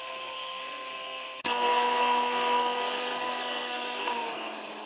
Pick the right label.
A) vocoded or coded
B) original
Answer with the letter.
A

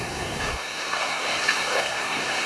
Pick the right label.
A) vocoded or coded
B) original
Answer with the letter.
A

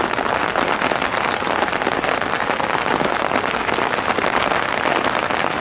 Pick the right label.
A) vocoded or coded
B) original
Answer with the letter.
B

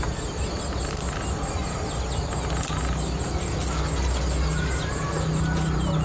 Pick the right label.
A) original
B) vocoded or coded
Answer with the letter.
A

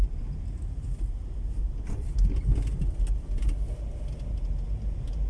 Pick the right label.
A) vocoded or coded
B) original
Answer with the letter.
B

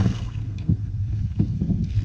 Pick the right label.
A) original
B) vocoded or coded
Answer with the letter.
B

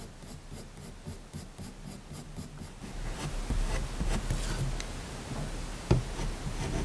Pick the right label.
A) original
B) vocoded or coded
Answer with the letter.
A